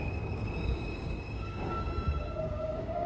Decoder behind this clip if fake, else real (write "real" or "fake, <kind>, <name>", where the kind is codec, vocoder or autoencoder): fake, codec, DAC